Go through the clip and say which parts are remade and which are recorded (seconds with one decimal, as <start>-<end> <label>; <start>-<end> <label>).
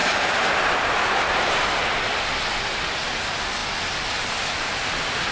0.0-2.0 remade; 2.0-5.3 recorded